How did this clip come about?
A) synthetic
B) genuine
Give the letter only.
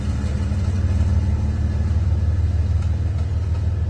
B